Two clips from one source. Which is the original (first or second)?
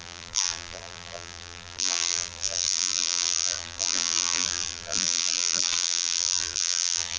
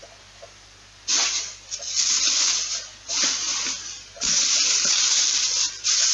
second